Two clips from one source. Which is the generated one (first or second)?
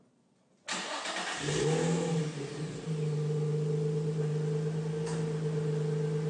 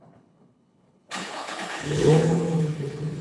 second